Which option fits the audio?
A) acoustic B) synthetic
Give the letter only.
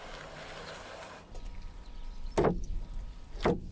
A